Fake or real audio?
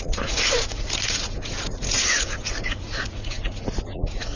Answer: fake